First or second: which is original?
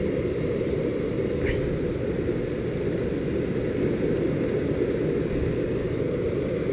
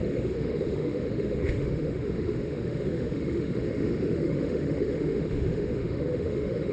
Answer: first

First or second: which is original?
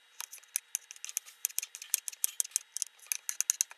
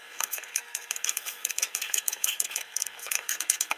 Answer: first